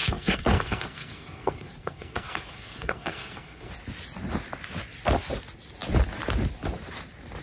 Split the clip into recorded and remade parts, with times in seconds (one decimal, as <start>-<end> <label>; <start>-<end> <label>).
0.0-3.7 remade; 3.7-7.4 recorded